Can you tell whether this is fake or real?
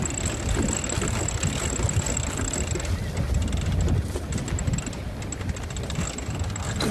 real